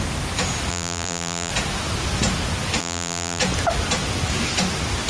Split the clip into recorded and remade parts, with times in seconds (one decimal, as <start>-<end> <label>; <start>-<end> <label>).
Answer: 0.0-0.7 recorded; 0.7-1.5 remade; 1.5-2.8 recorded; 2.8-3.4 remade; 3.4-5.1 recorded

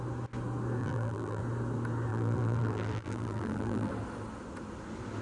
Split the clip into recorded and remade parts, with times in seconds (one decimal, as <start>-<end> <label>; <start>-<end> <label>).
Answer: 0.0-0.8 recorded; 0.8-1.4 remade; 1.4-2.1 recorded; 2.1-3.9 remade; 3.9-5.2 recorded

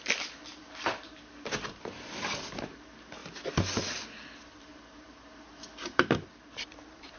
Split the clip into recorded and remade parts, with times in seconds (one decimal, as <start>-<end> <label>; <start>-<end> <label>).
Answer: 0.0-0.5 recorded; 0.5-1.5 remade; 1.5-4.7 recorded; 4.7-7.2 remade

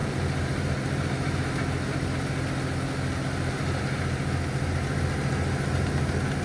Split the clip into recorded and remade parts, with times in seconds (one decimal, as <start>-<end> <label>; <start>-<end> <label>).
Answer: 0.0-6.4 recorded

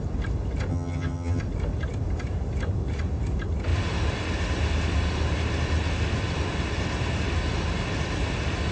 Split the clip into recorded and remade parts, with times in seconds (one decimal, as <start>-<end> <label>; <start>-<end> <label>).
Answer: 0.0-0.7 recorded; 0.7-1.4 remade; 1.4-8.7 recorded

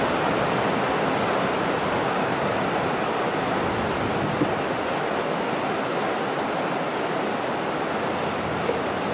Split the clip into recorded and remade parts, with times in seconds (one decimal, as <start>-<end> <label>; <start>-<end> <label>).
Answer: 0.0-1.8 recorded; 1.8-2.4 remade; 2.4-9.1 recorded